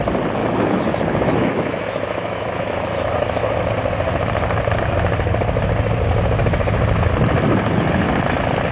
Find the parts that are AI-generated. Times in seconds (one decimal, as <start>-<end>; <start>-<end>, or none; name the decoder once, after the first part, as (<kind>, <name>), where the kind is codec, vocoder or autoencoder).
0.4-3.7 (autoencoder, DAC-VAE)